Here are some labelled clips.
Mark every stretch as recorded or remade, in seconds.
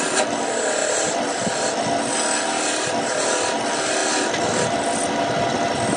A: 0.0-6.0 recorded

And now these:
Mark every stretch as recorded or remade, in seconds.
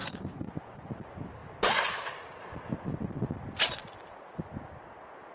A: 0.0-0.9 remade; 0.9-5.3 recorded